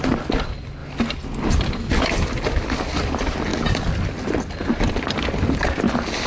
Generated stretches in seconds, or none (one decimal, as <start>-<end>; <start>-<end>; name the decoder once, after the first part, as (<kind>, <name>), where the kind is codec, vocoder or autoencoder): none